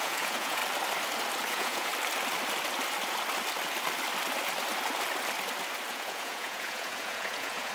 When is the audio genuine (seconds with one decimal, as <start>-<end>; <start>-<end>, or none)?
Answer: 0.6-1.5; 1.9-5.9